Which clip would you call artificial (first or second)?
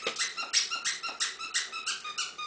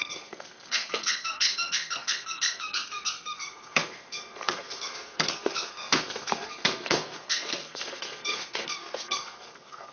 second